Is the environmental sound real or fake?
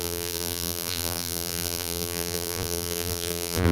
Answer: fake